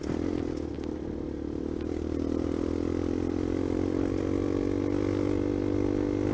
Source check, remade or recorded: recorded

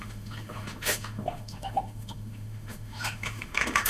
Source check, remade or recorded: remade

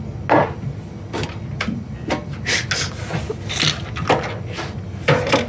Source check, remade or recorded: recorded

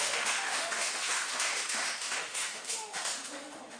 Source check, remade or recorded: remade